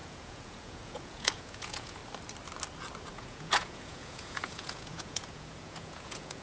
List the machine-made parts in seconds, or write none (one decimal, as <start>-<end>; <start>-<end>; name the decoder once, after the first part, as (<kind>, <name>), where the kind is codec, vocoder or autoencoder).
0.0-2.0 (vocoder, Vocos); 3.1-6.4